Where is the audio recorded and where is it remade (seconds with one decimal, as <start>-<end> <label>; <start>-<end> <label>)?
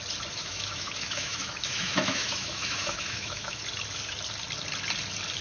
0.0-0.4 recorded; 0.4-3.6 remade; 3.6-5.4 recorded